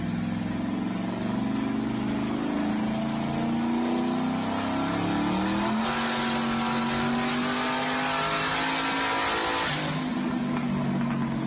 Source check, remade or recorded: recorded